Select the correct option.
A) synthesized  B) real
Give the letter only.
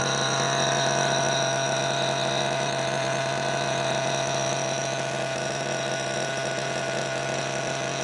B